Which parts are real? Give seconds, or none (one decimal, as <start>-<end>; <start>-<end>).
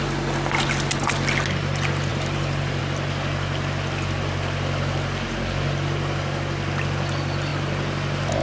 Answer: 0.0-2.1; 2.8-8.4